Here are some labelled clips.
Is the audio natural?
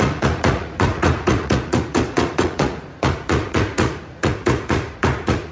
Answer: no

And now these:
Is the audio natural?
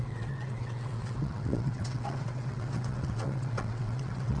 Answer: no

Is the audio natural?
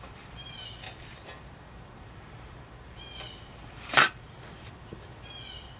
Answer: no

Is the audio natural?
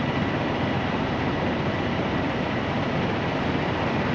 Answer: yes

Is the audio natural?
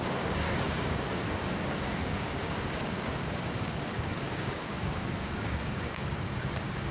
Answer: no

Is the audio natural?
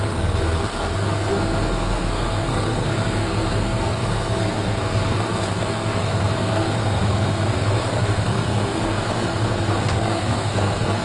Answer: no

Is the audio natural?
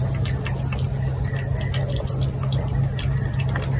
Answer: yes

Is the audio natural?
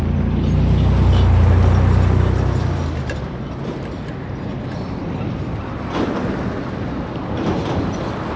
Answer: yes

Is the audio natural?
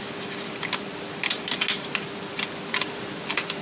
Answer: yes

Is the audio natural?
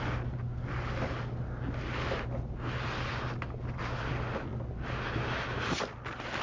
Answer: yes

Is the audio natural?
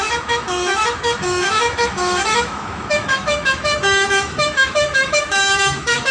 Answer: no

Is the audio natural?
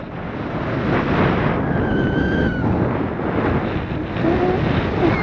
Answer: yes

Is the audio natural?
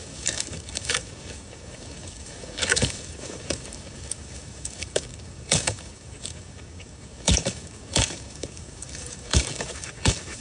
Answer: no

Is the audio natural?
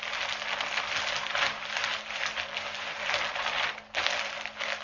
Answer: yes